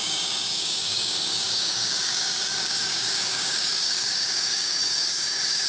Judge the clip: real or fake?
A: fake